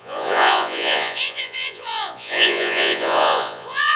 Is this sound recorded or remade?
remade